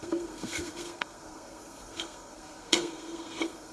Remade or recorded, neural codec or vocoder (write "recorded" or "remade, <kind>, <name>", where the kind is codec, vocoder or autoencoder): remade, codec, SNAC